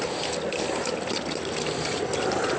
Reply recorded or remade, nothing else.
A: recorded